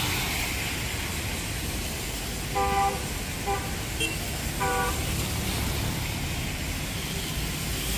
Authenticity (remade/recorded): recorded